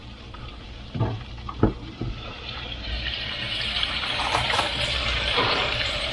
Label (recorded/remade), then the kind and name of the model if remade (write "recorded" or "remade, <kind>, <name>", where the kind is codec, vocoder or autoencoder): remade, vocoder, BigVGAN v2